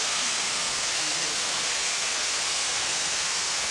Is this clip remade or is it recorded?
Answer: remade